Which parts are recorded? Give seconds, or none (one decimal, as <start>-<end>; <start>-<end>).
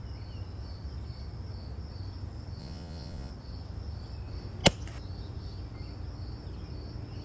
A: 0.0-2.6; 3.3-7.2